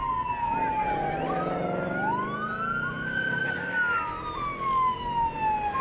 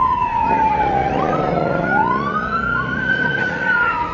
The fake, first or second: second